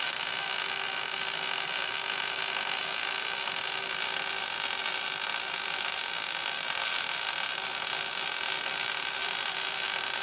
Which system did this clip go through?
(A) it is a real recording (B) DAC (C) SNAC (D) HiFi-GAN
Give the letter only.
A